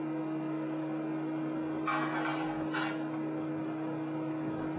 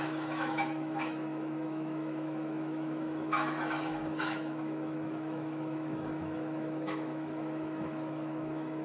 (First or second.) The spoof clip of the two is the second